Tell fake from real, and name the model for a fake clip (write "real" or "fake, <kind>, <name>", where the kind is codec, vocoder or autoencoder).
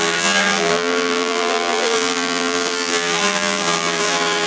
fake, vocoder, BigVGAN v2